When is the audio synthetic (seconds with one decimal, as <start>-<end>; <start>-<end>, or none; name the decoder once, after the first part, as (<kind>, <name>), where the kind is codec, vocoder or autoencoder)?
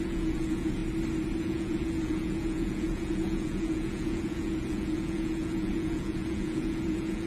0.0-0.8 (vocoder, Vocos); 1.4-7.3